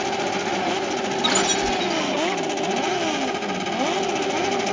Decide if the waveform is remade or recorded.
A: recorded